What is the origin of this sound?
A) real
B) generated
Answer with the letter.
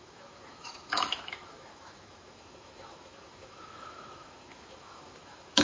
B